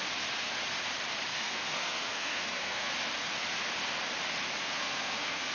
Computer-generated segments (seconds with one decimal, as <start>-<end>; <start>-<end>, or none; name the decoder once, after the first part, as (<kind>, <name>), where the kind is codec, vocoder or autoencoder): 1.3-2.9 (codec, SNAC); 4.6-5.5